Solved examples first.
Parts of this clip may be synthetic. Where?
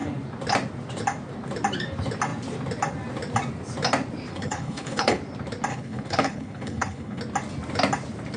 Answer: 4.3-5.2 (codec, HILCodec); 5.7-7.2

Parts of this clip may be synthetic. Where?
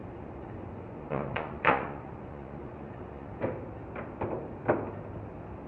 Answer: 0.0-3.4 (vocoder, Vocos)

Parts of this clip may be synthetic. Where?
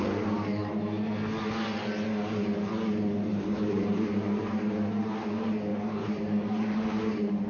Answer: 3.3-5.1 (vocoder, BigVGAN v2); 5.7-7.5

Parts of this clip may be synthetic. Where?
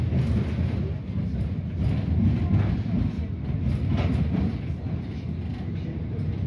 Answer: none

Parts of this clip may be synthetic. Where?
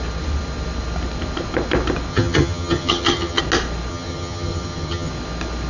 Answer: 2.1-3.4 (vocoder, HiFi-GAN); 3.9-5.1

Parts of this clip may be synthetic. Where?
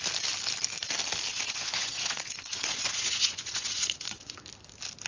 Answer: 1.3-4.4 (vocoder, Vocos)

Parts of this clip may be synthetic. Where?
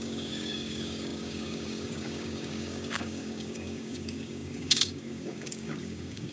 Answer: 0.0-6.3 (codec, DAC)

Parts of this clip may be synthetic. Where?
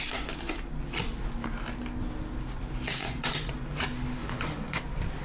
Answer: 3.0-3.5 (vocoder, Vocos); 4.2-4.8